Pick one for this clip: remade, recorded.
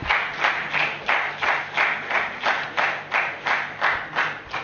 recorded